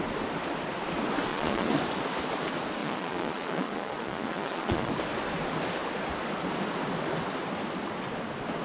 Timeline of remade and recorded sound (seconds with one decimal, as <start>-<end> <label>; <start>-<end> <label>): 0.0-1.3 recorded; 1.3-1.8 remade; 1.8-2.8 recorded; 2.8-4.9 remade; 4.9-8.6 recorded